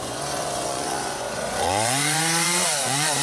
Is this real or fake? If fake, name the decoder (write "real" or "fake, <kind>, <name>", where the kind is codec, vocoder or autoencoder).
fake, vocoder, Vocos